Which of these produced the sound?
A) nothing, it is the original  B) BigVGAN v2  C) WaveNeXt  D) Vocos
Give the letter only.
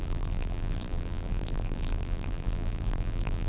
B